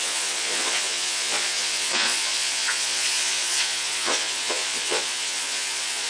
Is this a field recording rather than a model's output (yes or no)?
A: no